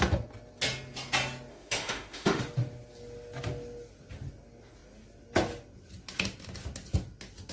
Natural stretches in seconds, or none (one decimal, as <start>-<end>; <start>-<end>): 0.0-1.5; 2.4-7.5